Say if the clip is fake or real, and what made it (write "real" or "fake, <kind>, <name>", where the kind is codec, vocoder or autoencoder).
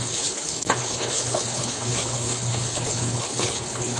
fake, codec, HILCodec